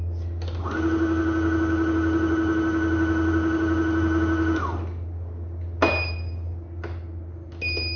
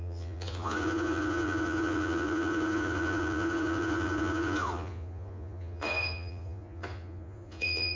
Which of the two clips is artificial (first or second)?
second